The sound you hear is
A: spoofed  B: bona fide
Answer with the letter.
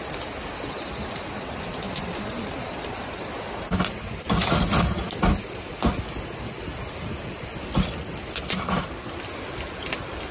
B